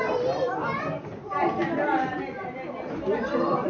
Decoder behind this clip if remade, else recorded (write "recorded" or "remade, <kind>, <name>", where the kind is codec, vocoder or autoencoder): recorded